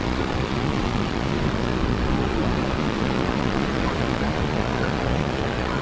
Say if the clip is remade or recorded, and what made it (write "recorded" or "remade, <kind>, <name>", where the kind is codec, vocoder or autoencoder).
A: remade, vocoder, Vocos